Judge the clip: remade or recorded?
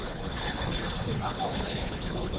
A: remade